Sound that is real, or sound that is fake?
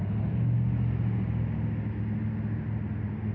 real